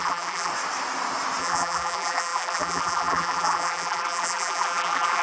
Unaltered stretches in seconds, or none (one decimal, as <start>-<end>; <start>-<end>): 0.5-1.4